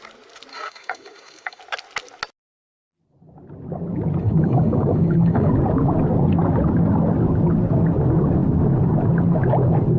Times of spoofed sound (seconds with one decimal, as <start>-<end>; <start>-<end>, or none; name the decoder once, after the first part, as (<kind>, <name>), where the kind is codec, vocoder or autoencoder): 0.5-1.6 (codec, DAC); 4.2-5.5